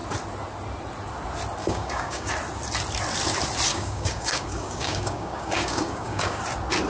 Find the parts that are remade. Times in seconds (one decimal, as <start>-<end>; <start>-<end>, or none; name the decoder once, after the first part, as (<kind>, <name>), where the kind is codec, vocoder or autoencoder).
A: 1.6-2.3 (codec, DAC); 3.7-6.4